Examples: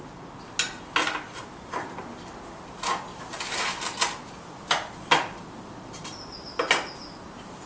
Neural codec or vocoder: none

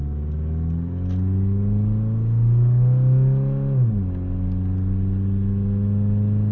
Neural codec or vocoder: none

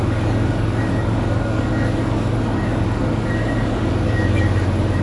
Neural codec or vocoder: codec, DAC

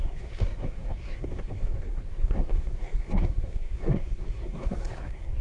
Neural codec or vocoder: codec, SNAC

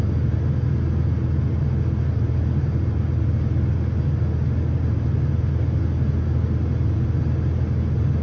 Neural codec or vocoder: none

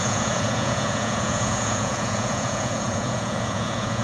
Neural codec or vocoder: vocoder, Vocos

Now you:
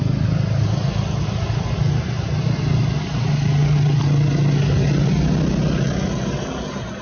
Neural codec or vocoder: none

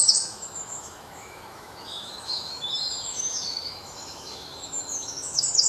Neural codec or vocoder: autoencoder, DAC-VAE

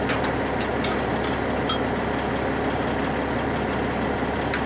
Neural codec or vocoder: none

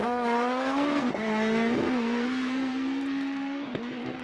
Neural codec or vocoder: codec, SNAC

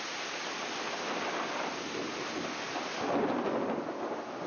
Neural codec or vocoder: none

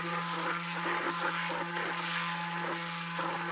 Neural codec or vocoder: none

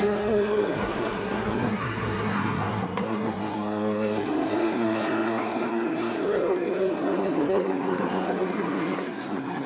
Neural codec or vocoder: codec, SNAC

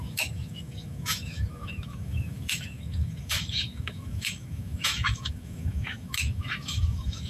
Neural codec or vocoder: autoencoder, DAC-VAE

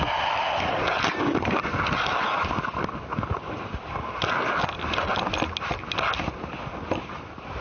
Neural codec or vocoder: none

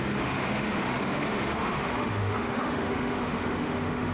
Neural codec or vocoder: autoencoder, DAC-VAE